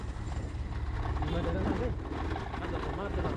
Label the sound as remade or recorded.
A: recorded